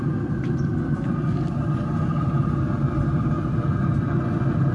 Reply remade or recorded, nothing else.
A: recorded